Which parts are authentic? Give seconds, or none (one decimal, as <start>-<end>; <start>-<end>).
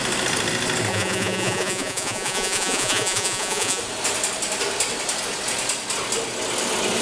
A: 0.0-0.9; 3.8-7.0